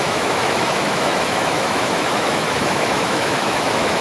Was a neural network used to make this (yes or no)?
yes